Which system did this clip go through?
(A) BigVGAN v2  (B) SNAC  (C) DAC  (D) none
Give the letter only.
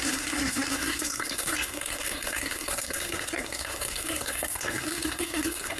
B